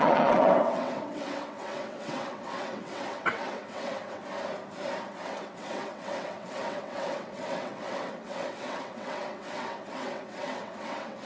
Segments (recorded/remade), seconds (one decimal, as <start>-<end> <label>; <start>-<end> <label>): 0.0-4.2 remade; 4.2-5.1 recorded; 5.1-11.3 remade